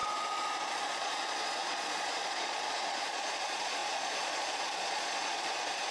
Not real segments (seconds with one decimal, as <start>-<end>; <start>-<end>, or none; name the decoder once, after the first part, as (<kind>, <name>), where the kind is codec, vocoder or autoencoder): 0.0-5.9 (vocoder, Vocos)